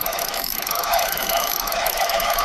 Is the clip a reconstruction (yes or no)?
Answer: yes